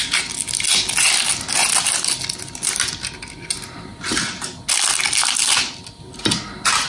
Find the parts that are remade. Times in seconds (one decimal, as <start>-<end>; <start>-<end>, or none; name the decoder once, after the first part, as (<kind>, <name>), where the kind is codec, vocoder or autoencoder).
none